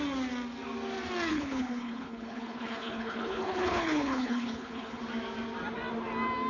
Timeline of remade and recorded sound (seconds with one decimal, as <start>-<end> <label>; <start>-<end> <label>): 0.0-1.3 recorded; 1.3-5.0 remade; 5.0-6.5 recorded